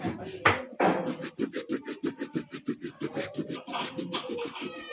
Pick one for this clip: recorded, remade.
recorded